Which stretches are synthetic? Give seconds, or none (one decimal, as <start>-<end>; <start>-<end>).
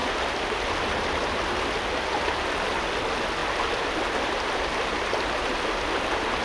none